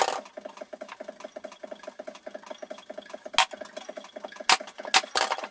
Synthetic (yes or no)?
no